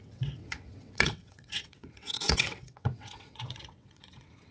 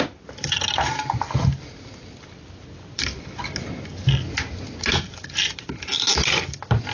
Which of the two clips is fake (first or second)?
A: first